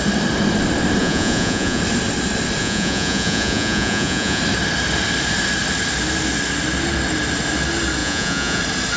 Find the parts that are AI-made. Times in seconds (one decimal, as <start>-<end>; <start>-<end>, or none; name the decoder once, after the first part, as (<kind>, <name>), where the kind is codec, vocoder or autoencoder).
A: 1.0-1.8 (vocoder, Vocos); 2.6-4.4; 8.0-8.6